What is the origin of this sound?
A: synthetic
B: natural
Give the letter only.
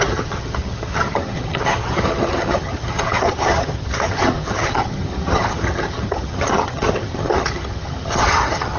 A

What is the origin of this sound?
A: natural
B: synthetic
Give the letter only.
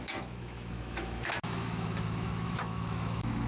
B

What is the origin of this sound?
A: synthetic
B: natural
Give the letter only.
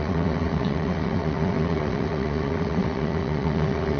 A